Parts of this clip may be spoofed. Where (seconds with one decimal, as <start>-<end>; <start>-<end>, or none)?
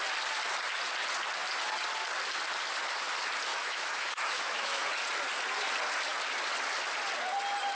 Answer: 3.5-4.9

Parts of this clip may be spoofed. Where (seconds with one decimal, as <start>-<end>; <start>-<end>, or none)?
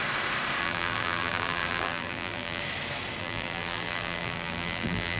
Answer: 0.6-2.6; 3.2-5.2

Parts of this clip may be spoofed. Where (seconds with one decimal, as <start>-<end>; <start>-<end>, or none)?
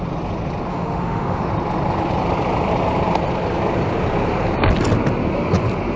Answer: 0.7-1.5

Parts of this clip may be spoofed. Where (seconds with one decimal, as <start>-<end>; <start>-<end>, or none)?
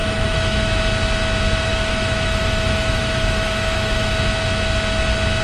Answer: 0.0-0.8; 1.7-4.0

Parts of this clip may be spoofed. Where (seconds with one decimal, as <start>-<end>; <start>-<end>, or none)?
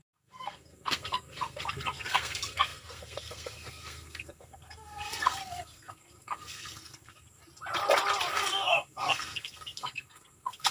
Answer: 0.0-7.4; 8.3-10.7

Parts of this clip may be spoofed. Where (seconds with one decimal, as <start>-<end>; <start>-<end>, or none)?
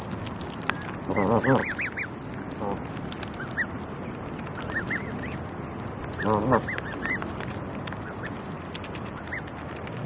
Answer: none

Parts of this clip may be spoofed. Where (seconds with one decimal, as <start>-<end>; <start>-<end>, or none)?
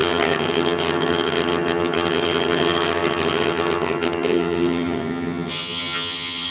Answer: 0.0-6.5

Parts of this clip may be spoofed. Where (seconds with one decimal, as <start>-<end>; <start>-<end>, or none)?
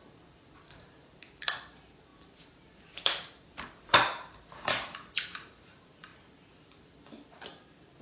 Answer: 0.0-8.0